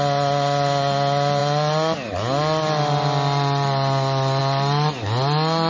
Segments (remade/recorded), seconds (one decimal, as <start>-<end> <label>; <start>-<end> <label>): 0.0-5.7 recorded